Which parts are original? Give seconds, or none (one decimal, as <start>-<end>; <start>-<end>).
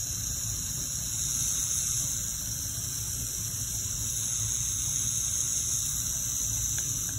0.0-7.2